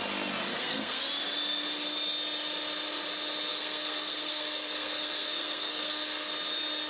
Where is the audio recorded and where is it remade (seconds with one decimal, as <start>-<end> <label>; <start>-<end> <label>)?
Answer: 0.0-0.5 recorded; 0.5-1.0 remade; 1.0-3.5 recorded; 3.5-6.3 remade; 6.3-6.9 recorded